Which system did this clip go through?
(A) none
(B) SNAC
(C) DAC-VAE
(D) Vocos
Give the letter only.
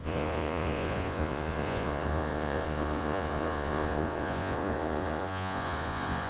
D